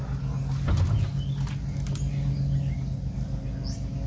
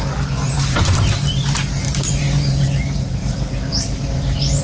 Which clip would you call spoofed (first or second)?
second